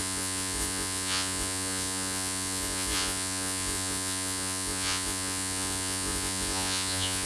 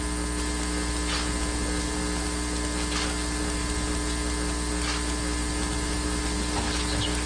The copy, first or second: first